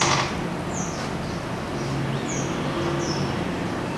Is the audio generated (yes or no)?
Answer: no